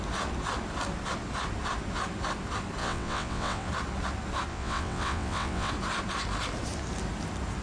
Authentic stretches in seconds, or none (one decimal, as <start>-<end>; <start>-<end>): 0.0-2.8; 3.7-4.5; 5.7-7.6